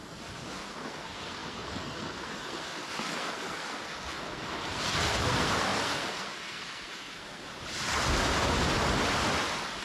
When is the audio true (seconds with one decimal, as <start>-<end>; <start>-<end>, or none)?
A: 7.5-9.8